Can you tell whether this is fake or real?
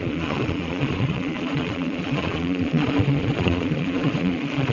fake